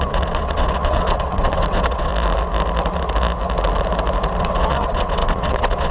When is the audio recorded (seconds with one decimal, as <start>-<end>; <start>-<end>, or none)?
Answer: 2.1-4.4